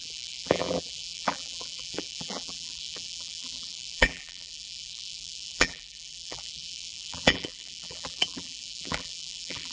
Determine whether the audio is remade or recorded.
remade